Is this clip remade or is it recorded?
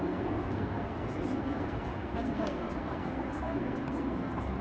remade